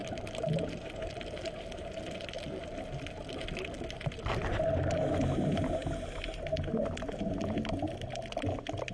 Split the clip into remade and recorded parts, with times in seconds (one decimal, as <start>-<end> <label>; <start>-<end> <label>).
0.0-8.9 recorded